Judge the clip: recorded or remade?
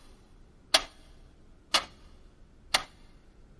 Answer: recorded